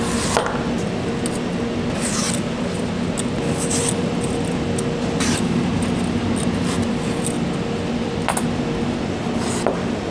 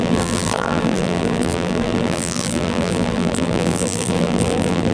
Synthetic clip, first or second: second